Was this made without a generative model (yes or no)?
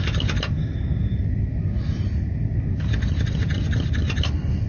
yes